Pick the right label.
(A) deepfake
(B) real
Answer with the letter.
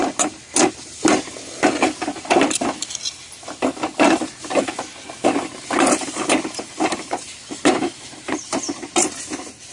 B